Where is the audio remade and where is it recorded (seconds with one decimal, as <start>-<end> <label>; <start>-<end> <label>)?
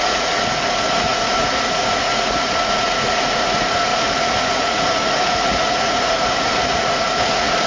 0.0-7.7 remade